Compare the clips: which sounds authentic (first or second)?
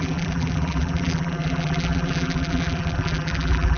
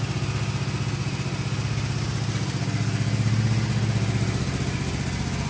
second